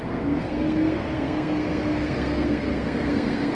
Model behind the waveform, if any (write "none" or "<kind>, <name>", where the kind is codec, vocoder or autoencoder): codec, SNAC